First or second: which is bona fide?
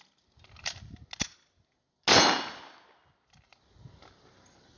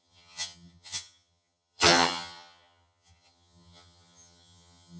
first